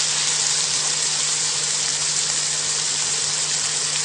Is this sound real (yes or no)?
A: yes